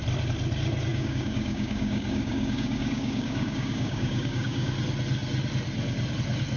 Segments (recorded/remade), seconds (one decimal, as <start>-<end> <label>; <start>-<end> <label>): 0.0-0.9 recorded; 0.9-4.7 remade; 4.7-6.6 recorded